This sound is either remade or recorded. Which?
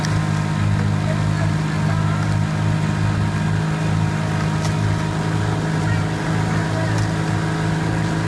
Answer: recorded